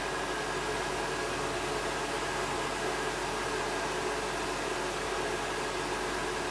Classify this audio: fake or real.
real